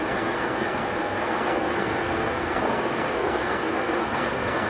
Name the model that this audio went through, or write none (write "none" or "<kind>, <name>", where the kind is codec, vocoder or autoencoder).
codec, SNAC